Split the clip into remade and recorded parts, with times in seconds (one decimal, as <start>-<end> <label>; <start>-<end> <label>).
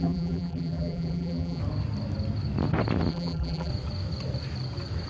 0.0-1.6 remade; 1.6-3.1 recorded; 3.1-3.7 remade; 3.7-5.1 recorded